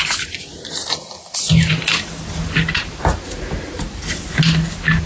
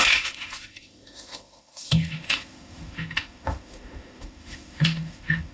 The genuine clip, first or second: first